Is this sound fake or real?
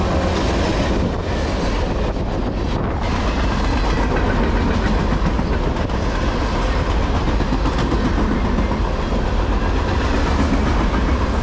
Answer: real